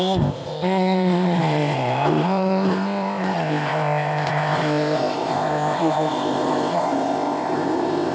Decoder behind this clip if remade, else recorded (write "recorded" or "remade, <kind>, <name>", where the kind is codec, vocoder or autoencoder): remade, codec, ZipCodec